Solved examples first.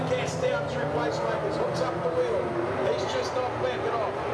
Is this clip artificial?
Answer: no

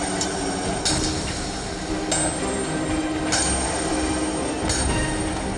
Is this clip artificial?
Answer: no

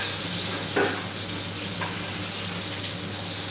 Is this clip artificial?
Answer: no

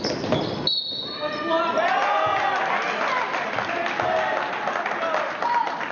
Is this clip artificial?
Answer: no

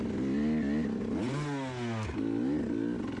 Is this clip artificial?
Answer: no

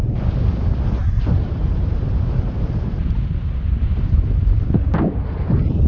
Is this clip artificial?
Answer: yes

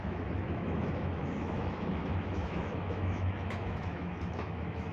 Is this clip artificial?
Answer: yes